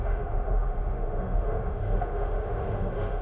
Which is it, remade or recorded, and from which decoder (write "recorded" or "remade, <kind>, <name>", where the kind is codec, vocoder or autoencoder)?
remade, autoencoder, DAC-VAE